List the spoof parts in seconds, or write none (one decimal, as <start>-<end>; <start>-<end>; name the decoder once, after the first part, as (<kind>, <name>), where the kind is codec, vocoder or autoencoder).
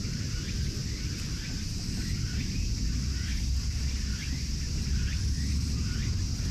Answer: none